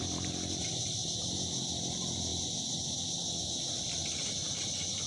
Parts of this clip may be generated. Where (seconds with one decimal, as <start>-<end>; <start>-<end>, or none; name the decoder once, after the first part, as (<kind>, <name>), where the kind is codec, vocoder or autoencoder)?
0.0-1.0 (vocoder, BigVGAN v2); 1.7-5.1